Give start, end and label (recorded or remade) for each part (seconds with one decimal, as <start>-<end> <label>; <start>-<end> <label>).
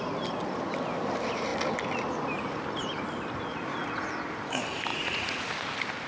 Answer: 0.0-3.5 recorded; 3.5-4.1 remade; 4.1-4.9 recorded; 4.9-5.4 remade; 5.4-6.1 recorded